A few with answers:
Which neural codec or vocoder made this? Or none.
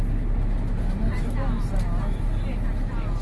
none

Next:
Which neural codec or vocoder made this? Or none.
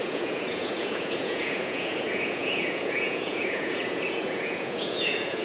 vocoder, Vocos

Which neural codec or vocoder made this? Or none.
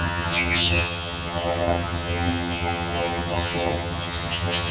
vocoder, HiFi-GAN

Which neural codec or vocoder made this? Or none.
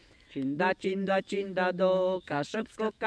autoencoder, DAC-VAE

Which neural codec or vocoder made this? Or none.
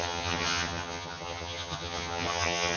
vocoder, HiFi-GAN